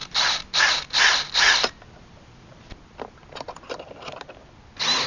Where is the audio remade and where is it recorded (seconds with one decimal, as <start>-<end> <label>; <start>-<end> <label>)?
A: 0.0-5.1 recorded